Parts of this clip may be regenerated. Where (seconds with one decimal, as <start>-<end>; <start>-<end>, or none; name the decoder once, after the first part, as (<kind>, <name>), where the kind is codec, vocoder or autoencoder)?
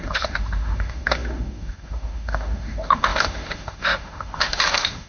0.0-5.1 (autoencoder, DAC-VAE)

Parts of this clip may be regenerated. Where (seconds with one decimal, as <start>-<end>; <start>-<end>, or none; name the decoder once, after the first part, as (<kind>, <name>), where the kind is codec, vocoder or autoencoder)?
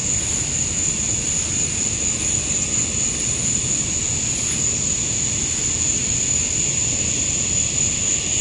none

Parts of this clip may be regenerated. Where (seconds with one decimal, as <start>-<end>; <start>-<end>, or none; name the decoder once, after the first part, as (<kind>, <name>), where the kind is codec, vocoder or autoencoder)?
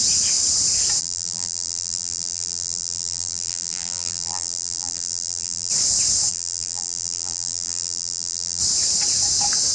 1.0-5.7 (vocoder, BigVGAN v2); 6.3-8.6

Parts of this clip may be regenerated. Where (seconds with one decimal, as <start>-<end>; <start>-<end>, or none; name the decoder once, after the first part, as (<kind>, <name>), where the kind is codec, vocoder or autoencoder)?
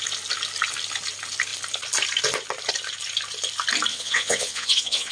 3.9-5.1 (vocoder, WaveNeXt)